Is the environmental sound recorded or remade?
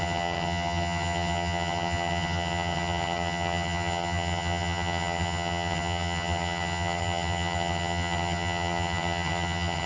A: remade